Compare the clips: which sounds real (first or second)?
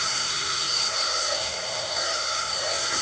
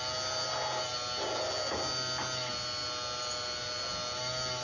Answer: second